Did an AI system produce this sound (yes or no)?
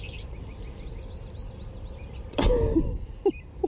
no